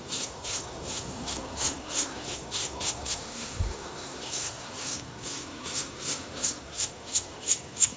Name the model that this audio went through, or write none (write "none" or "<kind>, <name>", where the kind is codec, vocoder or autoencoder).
codec, SNAC